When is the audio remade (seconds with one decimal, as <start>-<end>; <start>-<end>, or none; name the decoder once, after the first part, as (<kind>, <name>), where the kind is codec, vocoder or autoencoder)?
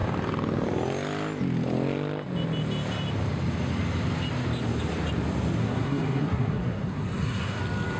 5.6-7.6 (codec, SNAC)